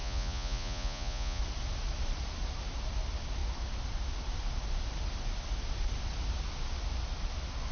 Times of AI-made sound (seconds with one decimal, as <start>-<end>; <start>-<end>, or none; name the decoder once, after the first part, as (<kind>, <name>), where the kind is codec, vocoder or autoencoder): 0.0-1.4 (vocoder, Vocos)